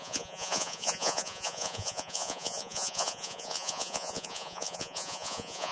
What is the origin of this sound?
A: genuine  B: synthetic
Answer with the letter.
B